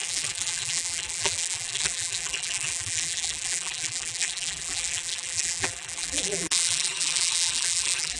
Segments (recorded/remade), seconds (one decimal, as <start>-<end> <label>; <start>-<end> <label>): 0.0-8.2 remade